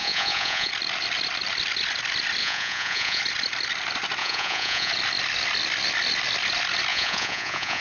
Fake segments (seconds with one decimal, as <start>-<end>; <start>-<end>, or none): 0.0-0.7; 2.4-3.2; 4.2-4.9; 6.9-7.8